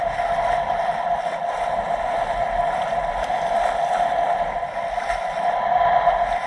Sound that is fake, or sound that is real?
real